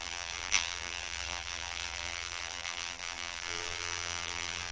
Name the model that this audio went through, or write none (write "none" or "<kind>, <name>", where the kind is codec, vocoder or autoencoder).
vocoder, BigVGAN v2